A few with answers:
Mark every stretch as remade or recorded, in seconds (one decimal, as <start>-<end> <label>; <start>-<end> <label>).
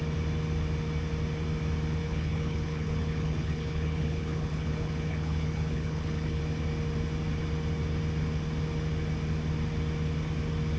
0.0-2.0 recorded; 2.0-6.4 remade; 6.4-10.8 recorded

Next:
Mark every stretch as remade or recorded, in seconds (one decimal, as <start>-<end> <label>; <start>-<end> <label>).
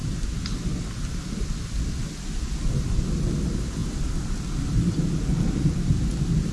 0.0-6.5 recorded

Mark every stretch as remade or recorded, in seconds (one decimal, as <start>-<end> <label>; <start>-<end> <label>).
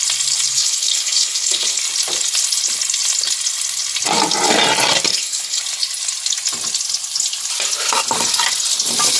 0.0-0.5 recorded; 0.5-1.8 remade; 1.8-5.1 recorded; 5.1-5.6 remade; 5.6-9.2 recorded